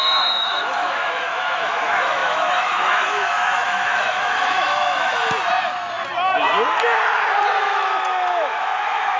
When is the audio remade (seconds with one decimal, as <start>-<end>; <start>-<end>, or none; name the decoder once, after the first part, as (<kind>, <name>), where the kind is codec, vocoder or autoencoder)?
0.0-5.1 (autoencoder, DAC-VAE); 7.6-9.2